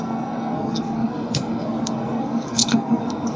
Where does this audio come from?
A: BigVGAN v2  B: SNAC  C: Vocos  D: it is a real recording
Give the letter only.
B